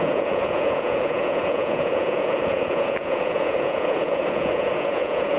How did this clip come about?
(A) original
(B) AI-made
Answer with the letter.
B